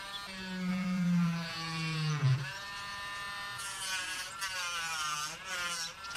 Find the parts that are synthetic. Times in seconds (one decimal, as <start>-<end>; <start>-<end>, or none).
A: 0.7-4.3